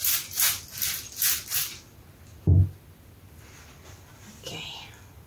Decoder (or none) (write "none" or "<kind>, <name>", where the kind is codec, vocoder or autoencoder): none